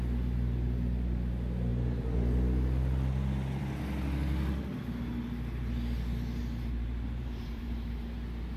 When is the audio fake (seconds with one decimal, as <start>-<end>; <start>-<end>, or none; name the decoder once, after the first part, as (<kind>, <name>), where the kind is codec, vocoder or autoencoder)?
6.4-8.1 (vocoder, BigVGAN v2)